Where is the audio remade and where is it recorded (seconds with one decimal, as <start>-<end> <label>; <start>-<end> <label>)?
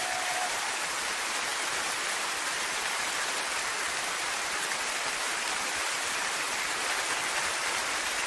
0.0-8.3 remade